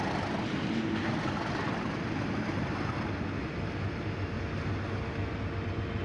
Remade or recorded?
recorded